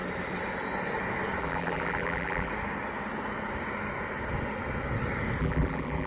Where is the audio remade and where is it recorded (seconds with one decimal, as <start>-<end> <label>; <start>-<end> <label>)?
0.0-1.4 recorded; 1.4-2.5 remade; 2.5-5.4 recorded; 5.4-6.1 remade